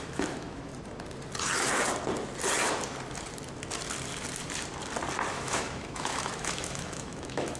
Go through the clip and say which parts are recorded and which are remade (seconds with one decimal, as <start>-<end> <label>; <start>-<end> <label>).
0.0-0.7 remade; 0.7-5.3 recorded; 5.3-7.6 remade